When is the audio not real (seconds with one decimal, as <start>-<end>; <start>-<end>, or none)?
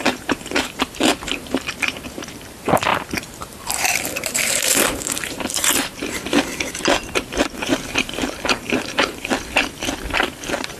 0.0-10.8